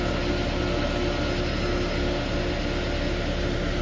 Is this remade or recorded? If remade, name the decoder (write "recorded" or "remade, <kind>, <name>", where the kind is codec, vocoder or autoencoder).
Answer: recorded